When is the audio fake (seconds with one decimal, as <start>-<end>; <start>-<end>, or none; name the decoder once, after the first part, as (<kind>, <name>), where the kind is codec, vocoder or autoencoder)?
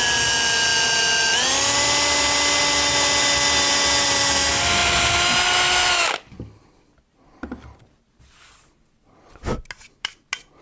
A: none